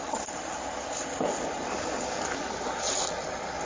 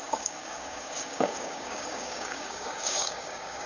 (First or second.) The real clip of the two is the first